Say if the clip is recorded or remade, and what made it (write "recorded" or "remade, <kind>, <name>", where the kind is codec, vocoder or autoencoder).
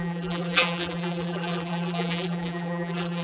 remade, vocoder, BigVGAN v2